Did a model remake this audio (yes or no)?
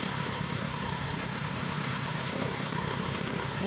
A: yes